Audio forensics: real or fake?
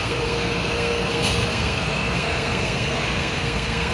fake